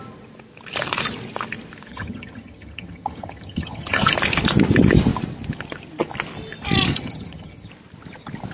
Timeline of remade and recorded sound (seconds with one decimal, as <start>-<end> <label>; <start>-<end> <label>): 0.0-1.9 recorded; 1.9-4.1 remade; 4.1-6.9 recorded; 6.9-7.7 remade; 7.7-8.5 recorded